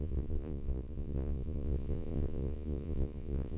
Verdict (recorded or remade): remade